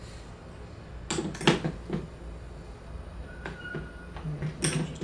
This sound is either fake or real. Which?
real